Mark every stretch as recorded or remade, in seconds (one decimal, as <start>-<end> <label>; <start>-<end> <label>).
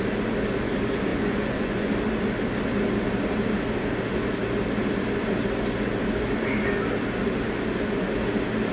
0.0-1.1 recorded; 1.1-1.9 remade; 1.9-8.7 recorded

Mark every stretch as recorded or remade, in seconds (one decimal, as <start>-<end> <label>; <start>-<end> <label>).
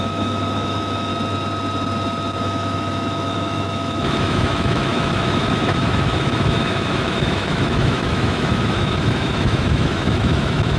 0.0-1.1 remade; 1.1-2.4 recorded; 2.4-10.8 remade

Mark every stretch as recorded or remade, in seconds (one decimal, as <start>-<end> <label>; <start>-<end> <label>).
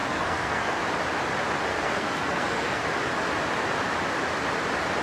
0.0-0.8 remade; 0.8-1.7 recorded; 1.7-2.8 remade; 2.8-5.0 recorded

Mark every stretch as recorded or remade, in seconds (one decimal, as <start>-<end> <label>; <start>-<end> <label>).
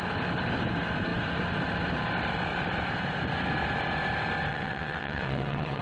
0.0-4.5 recorded; 4.5-5.8 remade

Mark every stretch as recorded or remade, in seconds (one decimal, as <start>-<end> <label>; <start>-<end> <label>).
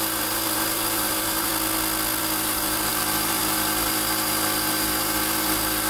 0.0-1.5 remade; 1.5-2.2 recorded; 2.2-5.9 remade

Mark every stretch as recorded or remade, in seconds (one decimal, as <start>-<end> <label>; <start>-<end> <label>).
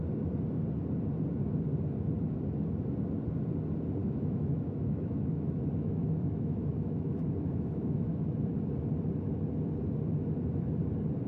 0.0-4.0 recorded; 4.0-8.2 remade; 8.2-11.3 recorded